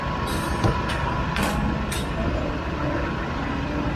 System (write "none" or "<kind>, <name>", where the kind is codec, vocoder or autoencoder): none